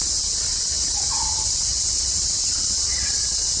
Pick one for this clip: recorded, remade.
recorded